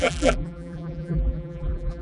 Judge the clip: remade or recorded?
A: remade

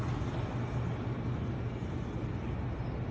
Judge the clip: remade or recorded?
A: recorded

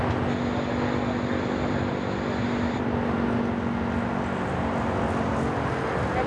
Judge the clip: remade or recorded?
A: recorded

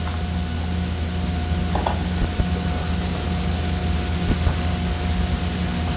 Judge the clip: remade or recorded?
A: recorded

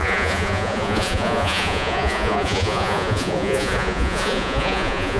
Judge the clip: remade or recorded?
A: remade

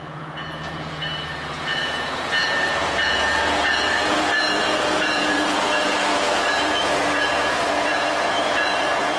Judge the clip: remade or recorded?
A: remade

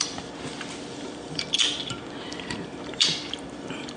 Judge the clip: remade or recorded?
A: remade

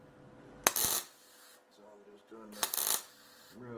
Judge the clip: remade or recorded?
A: recorded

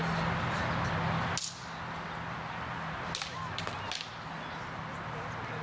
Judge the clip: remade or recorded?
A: recorded